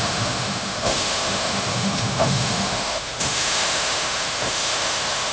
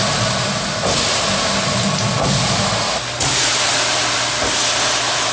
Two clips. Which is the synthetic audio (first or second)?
first